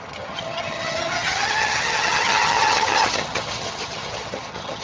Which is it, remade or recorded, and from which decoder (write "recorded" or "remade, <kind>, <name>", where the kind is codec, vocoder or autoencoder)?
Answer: remade, vocoder, HiFi-GAN